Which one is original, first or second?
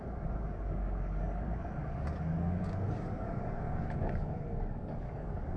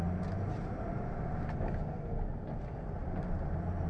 second